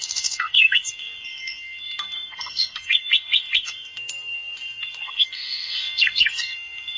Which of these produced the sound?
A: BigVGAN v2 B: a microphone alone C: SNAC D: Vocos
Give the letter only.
C